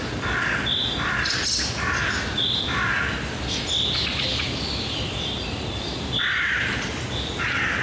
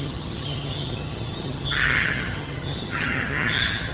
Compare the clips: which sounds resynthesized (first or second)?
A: second